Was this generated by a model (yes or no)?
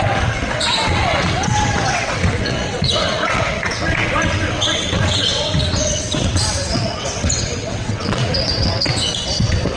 yes